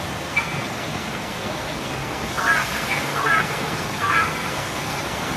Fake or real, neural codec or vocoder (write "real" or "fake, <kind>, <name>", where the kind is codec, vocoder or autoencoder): fake, codec, SNAC